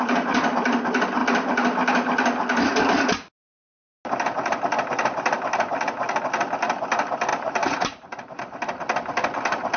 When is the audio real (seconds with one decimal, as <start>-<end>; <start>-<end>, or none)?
0.0-7.3; 8.4-9.8